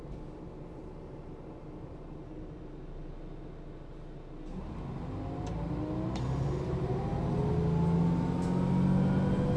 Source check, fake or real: real